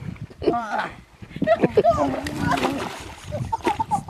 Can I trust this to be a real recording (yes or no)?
no